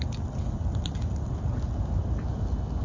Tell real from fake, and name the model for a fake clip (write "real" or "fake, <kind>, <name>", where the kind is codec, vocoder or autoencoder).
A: real